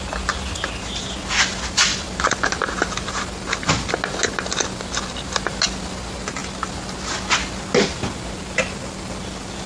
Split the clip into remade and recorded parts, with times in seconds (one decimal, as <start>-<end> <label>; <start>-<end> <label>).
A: 0.0-9.7 recorded